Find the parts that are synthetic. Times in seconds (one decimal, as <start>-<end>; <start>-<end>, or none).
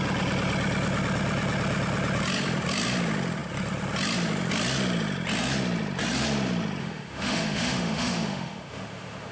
6.8-9.3